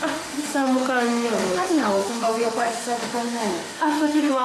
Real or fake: fake